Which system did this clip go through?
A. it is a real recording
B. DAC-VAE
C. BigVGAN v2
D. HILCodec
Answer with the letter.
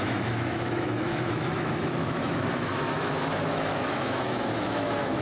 B